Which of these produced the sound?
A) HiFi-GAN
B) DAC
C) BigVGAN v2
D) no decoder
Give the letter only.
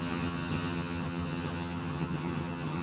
A